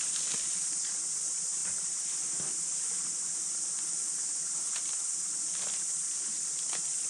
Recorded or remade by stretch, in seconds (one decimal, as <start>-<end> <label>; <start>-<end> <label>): 0.0-1.6 remade; 1.6-5.9 recorded; 5.9-7.1 remade